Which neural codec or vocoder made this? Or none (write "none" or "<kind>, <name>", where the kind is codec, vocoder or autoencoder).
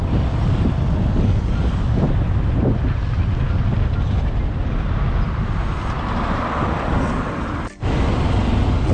none